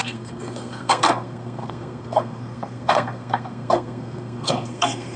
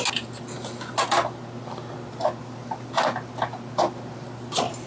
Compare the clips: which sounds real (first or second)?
second